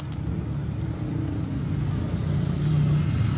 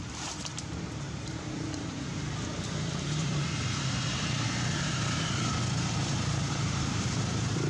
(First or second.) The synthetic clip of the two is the second